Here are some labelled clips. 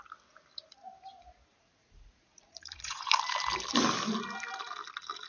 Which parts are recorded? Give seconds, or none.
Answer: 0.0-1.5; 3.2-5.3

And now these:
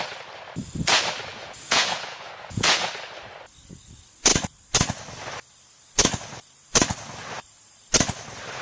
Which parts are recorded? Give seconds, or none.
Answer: 0.0-1.3; 2.9-8.6

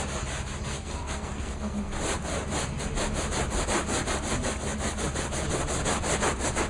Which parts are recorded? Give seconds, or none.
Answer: 0.0-0.7; 1.9-6.7

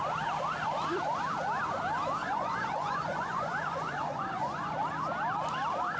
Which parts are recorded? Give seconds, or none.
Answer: 0.0-2.2; 4.7-6.0